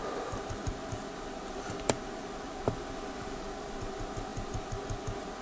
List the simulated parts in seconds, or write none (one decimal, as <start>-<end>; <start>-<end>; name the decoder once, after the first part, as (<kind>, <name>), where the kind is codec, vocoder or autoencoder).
0.0-0.7 (vocoder, BigVGAN v2)